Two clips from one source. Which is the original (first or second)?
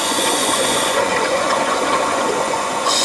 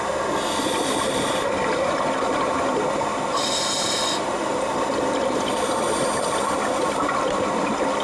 second